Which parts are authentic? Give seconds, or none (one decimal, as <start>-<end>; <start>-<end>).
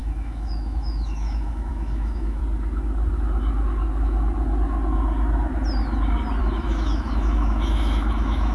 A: 2.4-6.4